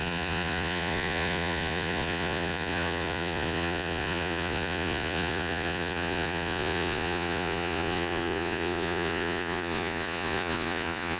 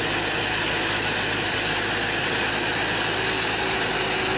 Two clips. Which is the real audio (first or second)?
second